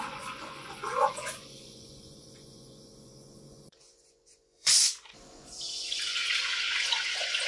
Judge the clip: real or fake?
fake